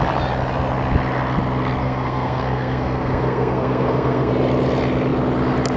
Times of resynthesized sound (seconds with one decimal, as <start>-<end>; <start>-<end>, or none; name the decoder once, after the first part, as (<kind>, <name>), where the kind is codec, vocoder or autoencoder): 1.8-4.3 (codec, SNAC)